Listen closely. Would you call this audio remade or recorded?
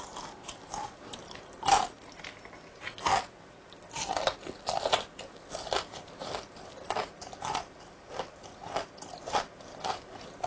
recorded